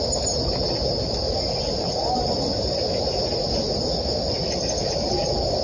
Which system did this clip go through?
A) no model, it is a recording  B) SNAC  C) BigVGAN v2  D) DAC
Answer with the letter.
A